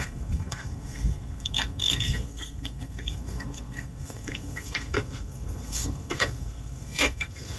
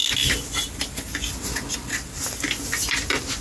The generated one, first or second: first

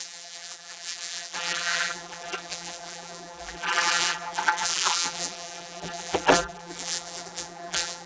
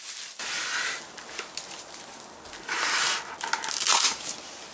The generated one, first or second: first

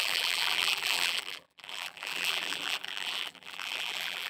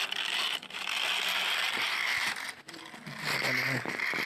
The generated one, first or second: first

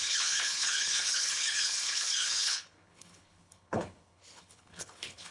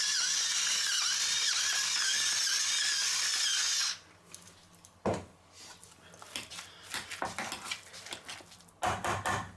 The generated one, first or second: first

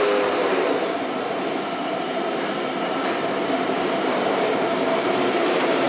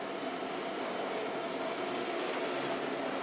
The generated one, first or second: first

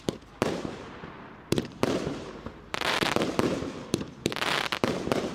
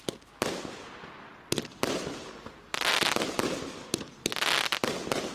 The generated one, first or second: first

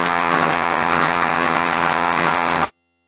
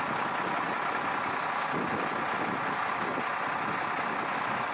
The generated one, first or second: first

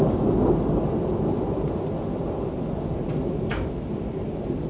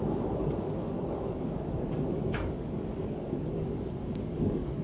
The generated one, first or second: second